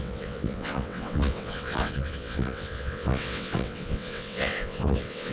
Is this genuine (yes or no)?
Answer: no